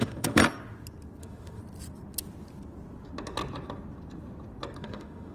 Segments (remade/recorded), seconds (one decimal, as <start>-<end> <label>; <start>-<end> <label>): 0.0-0.4 remade; 0.4-1.2 recorded; 1.2-1.6 remade; 1.6-4.8 recorded; 4.8-5.3 remade